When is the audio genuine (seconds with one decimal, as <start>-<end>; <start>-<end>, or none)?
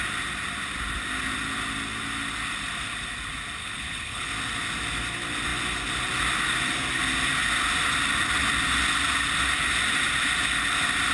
0.0-3.6; 4.3-11.1